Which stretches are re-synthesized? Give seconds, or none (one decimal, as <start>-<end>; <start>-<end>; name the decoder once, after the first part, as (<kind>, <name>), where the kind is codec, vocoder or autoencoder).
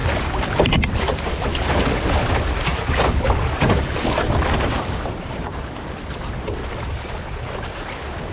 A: 0.0-2.3 (vocoder, BigVGAN v2); 2.7-7.4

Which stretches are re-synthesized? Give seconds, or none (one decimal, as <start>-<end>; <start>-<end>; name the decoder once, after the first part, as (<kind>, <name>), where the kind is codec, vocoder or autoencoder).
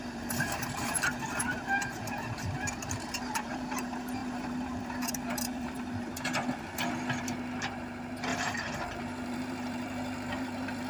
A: 0.0-6.1 (vocoder, BigVGAN v2); 7.2-10.9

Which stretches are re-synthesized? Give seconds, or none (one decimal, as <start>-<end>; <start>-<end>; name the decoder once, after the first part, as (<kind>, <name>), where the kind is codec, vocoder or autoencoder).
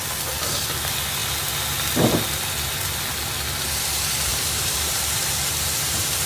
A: 4.3-6.3 (vocoder, BigVGAN v2)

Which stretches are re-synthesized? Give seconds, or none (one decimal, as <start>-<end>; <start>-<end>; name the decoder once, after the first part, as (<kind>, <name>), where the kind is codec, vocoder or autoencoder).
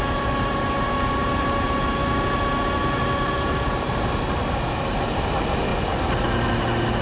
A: 0.0-2.0 (vocoder, BigVGAN v2); 4.6-5.7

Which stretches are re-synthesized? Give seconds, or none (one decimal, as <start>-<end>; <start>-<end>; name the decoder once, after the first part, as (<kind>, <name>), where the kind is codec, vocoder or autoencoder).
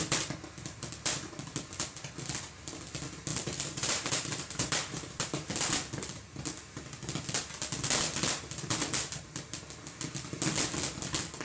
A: 3.3-5.5 (vocoder, BigVGAN v2)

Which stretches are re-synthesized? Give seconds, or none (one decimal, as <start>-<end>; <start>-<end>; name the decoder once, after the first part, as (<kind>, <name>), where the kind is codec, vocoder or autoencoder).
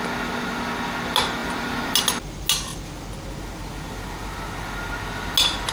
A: 1.4-1.9 (vocoder, BigVGAN v2)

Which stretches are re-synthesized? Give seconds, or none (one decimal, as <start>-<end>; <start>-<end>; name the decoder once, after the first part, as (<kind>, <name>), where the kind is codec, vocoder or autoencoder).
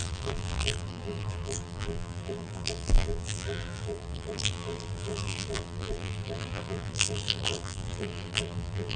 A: 0.0-9.0 (vocoder, BigVGAN v2)